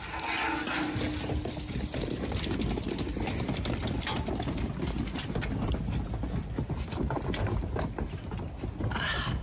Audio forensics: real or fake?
real